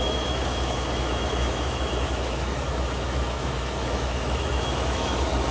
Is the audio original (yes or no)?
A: no